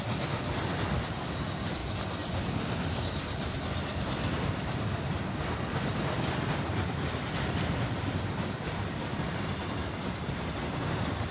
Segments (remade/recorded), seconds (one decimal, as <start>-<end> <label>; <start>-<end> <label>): 0.0-11.3 remade